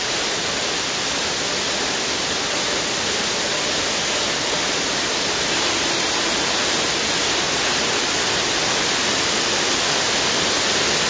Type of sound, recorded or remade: recorded